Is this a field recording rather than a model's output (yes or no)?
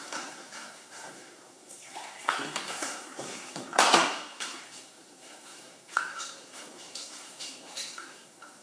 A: no